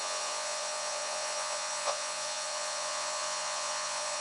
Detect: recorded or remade remade